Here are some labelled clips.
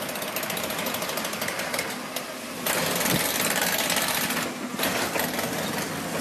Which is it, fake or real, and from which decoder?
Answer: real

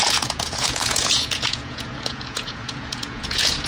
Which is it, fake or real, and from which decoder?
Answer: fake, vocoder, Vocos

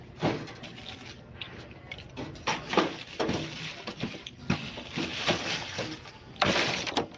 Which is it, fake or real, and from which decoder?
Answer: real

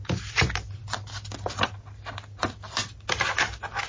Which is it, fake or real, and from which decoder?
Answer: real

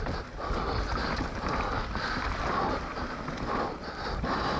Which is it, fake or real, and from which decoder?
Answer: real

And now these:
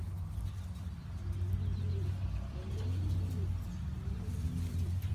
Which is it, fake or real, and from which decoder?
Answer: real